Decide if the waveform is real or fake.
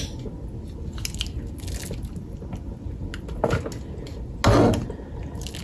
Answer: real